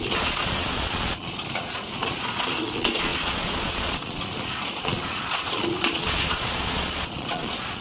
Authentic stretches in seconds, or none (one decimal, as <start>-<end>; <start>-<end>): none